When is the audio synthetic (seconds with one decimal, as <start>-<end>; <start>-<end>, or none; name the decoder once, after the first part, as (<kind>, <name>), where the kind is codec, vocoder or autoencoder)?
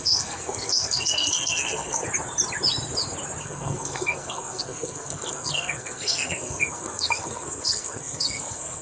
0.0-2.0 (codec, SNAC); 3.4-8.8